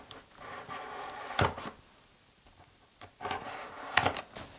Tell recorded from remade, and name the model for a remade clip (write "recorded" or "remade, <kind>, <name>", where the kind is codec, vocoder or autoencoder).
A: remade, vocoder, BigVGAN v2